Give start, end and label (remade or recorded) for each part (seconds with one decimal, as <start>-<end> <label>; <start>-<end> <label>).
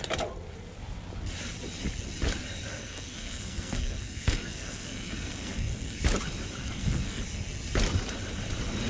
0.0-2.8 recorded; 2.8-6.0 remade; 6.0-6.6 recorded; 6.6-7.2 remade; 7.2-8.9 recorded